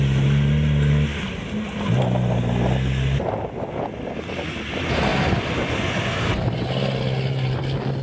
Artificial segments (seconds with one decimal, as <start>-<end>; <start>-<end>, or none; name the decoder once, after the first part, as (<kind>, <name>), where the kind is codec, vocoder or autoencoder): 5.1-6.4 (vocoder, BigVGAN v2)